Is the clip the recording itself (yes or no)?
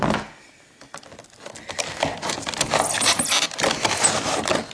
yes